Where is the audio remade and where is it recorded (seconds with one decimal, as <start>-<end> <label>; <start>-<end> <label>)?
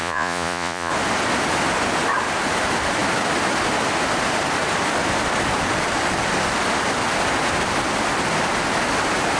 0.0-0.9 remade; 0.9-9.4 recorded